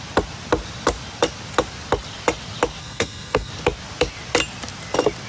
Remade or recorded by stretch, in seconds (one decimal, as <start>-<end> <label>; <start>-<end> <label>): 0.0-2.8 recorded; 2.8-3.5 remade; 3.5-5.3 recorded